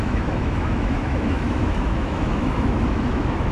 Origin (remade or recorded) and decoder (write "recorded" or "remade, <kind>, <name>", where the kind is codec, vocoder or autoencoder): remade, autoencoder, DAC-VAE